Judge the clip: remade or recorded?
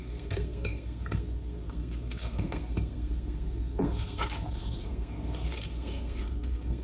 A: remade